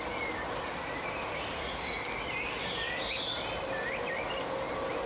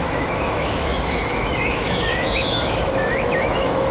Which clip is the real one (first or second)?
first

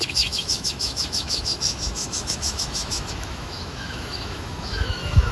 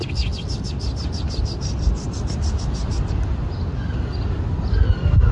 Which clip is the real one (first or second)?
second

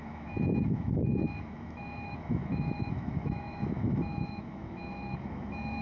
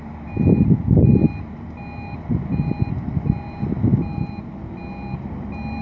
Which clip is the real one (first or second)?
second